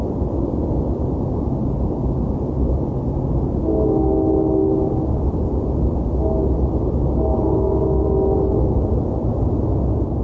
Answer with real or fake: real